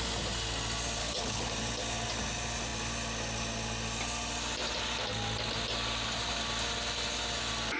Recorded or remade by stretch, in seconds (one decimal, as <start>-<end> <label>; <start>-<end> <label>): 0.0-1.0 recorded; 1.0-1.5 remade; 1.5-7.8 recorded